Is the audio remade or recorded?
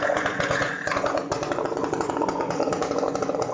remade